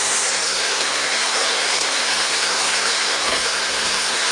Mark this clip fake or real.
fake